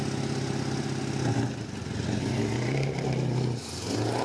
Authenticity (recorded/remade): recorded